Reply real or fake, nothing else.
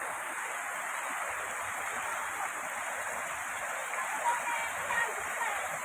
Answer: real